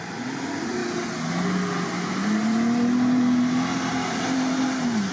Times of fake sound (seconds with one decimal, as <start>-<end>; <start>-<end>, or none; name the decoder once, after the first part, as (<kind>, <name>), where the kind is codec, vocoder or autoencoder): 0.0-0.8 (vocoder, BigVGAN v2); 3.9-5.1